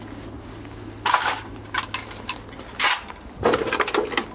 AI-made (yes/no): no